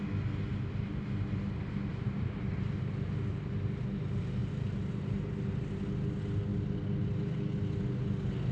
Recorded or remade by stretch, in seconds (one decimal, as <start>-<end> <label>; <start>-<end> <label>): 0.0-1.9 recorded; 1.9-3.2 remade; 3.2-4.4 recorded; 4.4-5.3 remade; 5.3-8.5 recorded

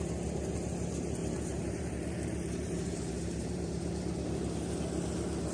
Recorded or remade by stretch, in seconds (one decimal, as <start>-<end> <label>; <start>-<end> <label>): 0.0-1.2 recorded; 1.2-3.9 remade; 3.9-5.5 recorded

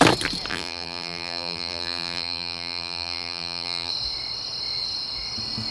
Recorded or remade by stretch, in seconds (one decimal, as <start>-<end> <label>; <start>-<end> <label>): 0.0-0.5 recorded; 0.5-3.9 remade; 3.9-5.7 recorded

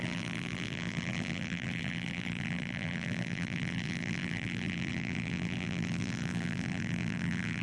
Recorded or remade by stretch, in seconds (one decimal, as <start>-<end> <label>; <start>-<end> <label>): 0.0-7.6 remade

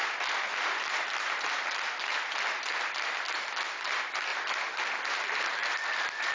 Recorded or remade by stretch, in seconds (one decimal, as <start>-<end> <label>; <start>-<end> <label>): 0.0-6.3 recorded

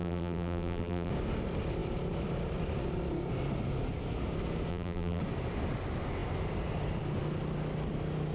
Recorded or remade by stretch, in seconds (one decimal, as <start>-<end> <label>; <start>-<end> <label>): 0.0-1.1 remade; 1.1-4.7 recorded; 4.7-5.2 remade; 5.2-8.3 recorded